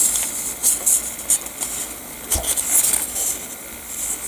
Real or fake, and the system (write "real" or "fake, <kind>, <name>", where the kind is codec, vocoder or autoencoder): real